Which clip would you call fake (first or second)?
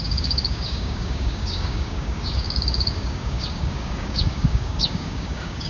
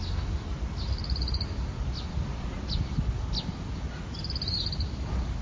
first